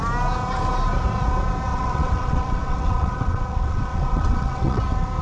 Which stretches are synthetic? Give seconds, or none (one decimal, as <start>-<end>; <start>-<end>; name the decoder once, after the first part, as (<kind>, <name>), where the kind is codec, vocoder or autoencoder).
1.7-4.8 (vocoder, WaveNeXt)